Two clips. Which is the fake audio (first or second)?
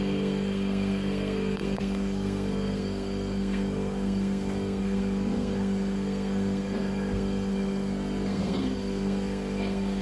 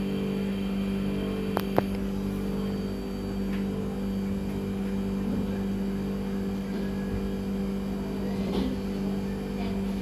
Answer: first